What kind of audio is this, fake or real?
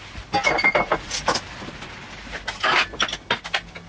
real